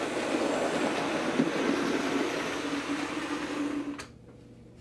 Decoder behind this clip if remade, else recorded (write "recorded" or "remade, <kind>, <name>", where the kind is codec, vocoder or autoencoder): recorded